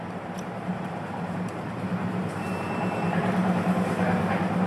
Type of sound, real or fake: fake